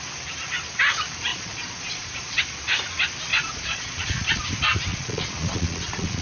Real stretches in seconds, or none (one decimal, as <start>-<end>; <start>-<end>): 0.0-1.3; 2.4-3.3; 4.4-4.9